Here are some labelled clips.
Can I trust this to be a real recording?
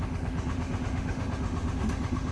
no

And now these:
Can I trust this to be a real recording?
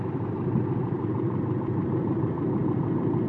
yes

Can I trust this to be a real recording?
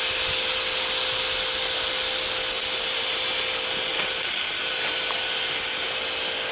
yes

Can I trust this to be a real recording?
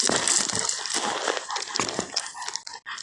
yes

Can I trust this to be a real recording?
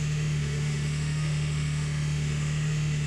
no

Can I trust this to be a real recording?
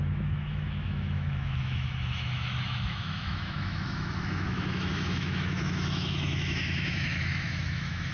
no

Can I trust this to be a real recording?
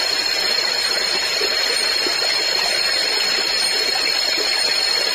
yes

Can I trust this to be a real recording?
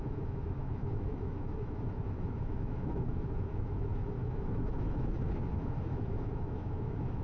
no